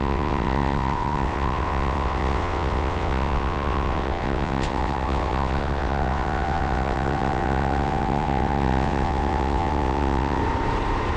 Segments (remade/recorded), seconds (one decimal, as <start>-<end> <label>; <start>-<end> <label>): 0.0-10.4 remade; 10.4-11.2 recorded